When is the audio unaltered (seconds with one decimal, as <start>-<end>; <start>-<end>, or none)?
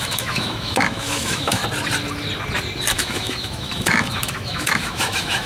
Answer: 1.6-2.9